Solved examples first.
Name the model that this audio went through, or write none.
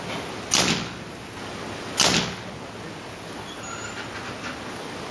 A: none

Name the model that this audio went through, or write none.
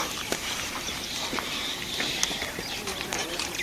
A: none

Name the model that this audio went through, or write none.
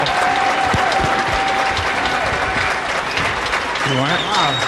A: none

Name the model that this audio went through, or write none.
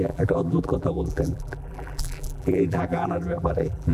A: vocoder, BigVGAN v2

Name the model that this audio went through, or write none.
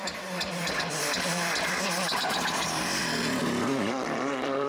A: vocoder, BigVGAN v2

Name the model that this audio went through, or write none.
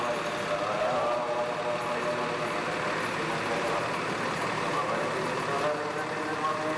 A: none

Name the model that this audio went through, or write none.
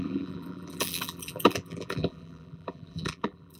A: vocoder, BigVGAN v2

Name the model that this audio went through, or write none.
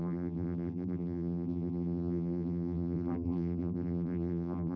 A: vocoder, BigVGAN v2